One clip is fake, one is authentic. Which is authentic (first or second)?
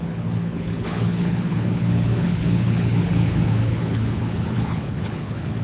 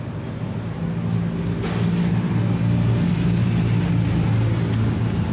second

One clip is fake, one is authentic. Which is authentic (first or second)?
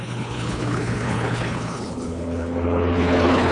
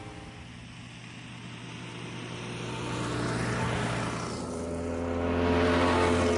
second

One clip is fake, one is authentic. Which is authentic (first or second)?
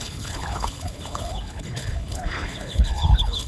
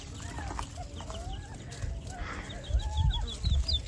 second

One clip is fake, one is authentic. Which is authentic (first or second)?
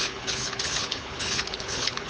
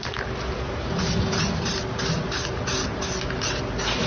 second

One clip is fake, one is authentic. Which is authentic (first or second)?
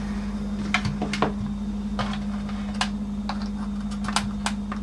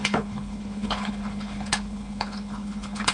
first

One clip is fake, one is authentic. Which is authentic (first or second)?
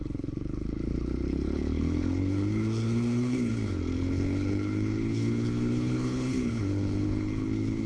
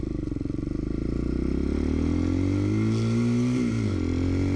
second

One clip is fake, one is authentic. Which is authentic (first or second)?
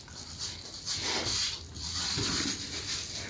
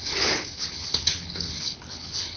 first